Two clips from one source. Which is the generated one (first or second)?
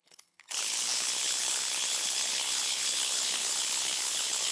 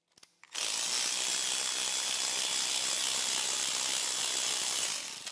first